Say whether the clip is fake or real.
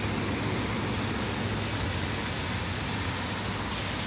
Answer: real